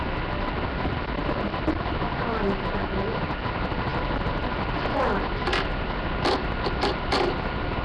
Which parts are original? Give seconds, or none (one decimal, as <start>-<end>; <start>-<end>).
0.0-7.8